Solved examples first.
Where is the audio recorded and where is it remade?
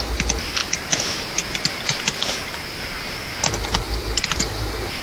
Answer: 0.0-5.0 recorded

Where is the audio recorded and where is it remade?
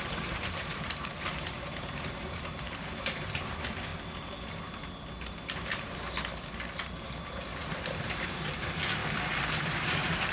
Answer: 0.0-3.9 remade; 3.9-8.0 recorded; 8.0-9.0 remade; 9.0-9.6 recorded; 9.6-10.3 remade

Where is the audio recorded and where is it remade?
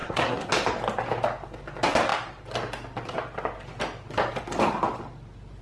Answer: 0.0-0.5 remade; 0.5-5.6 recorded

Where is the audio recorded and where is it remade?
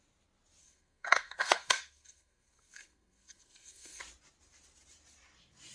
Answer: 0.0-0.6 recorded; 0.6-4.0 remade; 4.0-5.7 recorded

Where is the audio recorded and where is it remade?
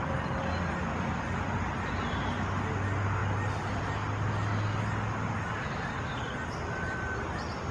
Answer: 0.0-7.7 recorded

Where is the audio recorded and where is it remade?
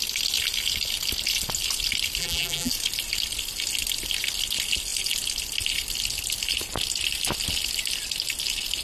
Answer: 0.0-2.2 recorded; 2.2-2.7 remade; 2.7-8.8 recorded